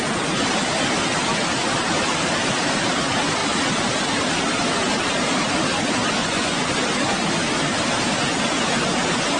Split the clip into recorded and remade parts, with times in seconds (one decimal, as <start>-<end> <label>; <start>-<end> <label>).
0.0-6.2 recorded; 6.2-6.7 remade; 6.7-9.4 recorded